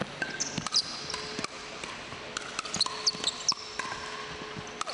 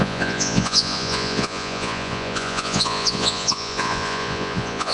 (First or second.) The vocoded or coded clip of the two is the second